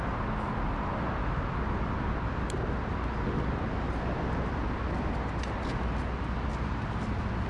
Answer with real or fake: real